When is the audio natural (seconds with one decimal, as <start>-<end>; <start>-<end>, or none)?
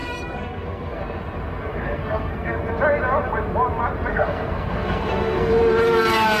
1.0-1.7; 2.6-4.1; 5.5-6.4